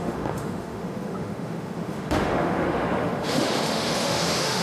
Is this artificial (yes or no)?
yes